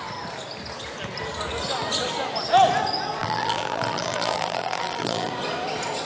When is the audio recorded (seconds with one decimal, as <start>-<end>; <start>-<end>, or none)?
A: 0.0-3.2; 5.3-6.0